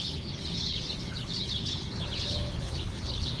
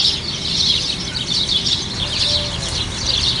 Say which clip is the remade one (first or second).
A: first